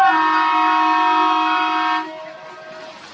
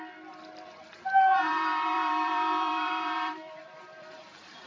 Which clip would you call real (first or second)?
first